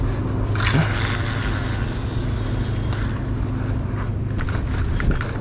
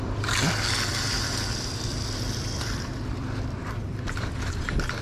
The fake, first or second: second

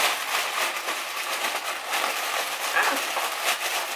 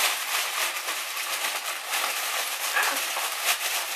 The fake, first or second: second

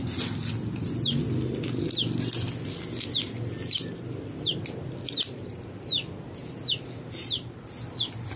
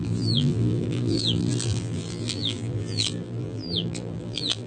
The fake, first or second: second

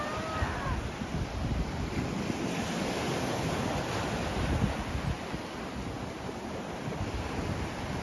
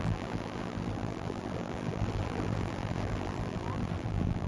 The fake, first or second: second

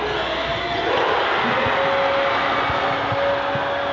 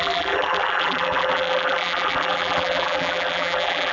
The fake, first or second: second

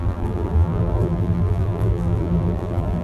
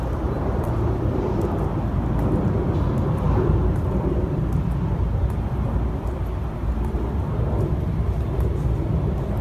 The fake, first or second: first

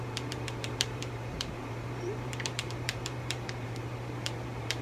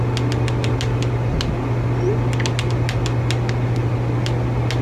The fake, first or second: first